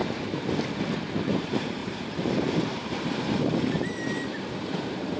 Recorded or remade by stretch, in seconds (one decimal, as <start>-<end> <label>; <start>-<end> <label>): 0.0-1.2 recorded; 1.2-5.2 remade